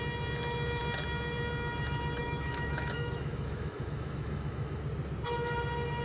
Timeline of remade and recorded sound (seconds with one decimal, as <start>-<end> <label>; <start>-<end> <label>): 0.0-2.2 recorded; 2.2-4.8 remade; 4.8-6.0 recorded